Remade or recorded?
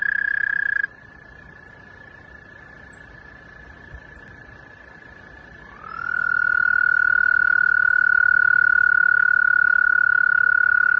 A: recorded